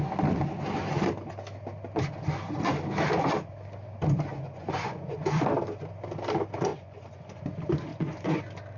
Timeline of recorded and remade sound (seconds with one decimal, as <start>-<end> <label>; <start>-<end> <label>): 0.0-4.3 recorded; 4.3-5.4 remade; 5.4-6.7 recorded; 6.7-7.4 remade; 7.4-7.9 recorded; 7.9-8.4 remade; 8.4-8.8 recorded